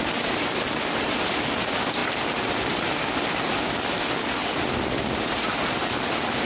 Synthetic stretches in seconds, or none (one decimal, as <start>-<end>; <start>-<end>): none